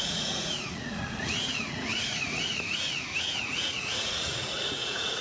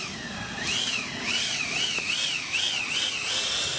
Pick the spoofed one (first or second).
first